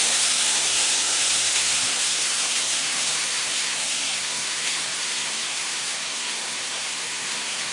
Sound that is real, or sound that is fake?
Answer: fake